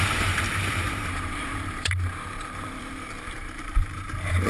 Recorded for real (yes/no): no